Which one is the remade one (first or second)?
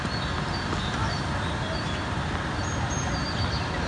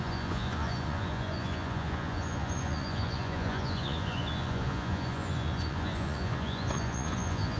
second